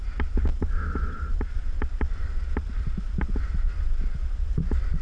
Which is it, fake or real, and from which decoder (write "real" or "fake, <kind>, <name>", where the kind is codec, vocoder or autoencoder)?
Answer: real